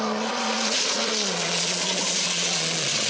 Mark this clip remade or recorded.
remade